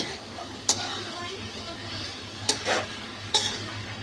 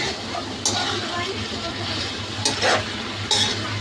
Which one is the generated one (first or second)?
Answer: first